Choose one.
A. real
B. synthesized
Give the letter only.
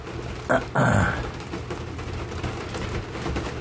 A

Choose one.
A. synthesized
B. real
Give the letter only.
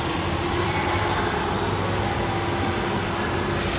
B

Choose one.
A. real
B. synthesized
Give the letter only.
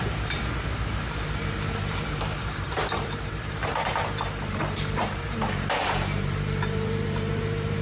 B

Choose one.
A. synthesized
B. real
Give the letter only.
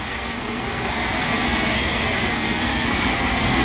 A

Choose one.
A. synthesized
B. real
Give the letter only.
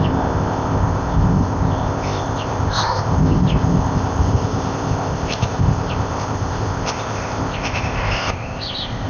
A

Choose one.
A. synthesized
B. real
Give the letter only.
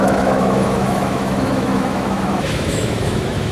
A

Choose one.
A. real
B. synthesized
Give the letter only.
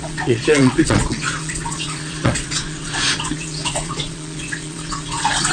B